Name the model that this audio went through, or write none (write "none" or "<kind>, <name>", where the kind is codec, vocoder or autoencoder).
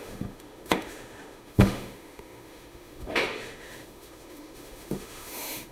autoencoder, DAC-VAE